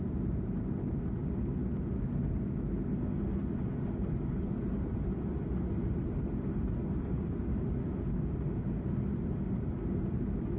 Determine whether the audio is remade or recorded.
recorded